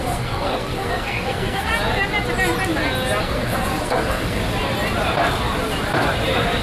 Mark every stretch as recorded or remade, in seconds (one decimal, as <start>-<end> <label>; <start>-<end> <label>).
0.0-1.7 remade; 1.7-3.2 recorded; 3.2-4.4 remade; 4.4-6.6 recorded